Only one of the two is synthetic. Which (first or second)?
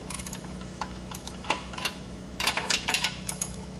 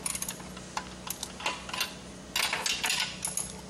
first